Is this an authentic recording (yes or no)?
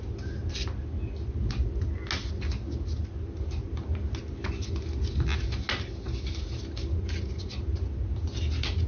yes